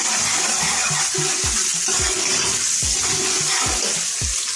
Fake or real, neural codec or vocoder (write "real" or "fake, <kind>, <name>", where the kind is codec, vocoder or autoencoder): real